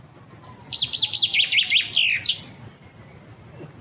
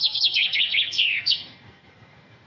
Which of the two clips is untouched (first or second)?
first